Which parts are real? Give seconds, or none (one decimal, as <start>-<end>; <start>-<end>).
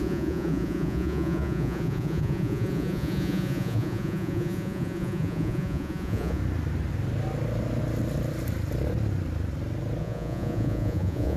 6.4-10.0